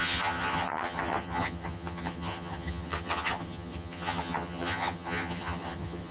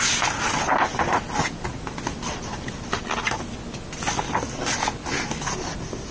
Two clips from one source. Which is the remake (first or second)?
first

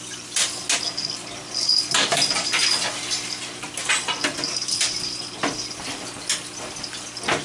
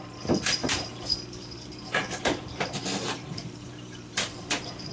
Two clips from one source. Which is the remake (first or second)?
second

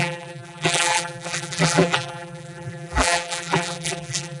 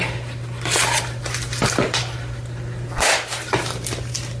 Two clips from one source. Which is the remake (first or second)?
first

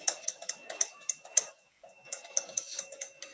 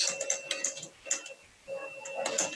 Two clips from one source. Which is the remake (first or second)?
first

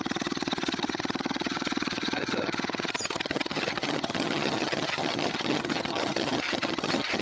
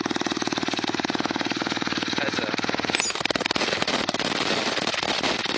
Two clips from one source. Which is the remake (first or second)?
first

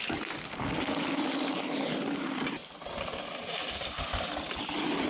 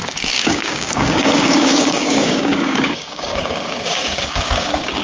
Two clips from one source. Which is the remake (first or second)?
second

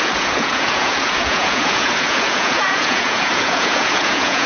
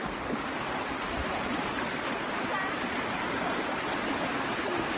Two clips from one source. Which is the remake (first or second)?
first